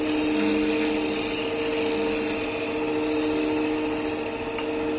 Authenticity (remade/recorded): recorded